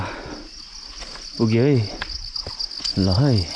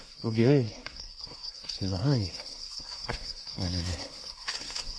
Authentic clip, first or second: first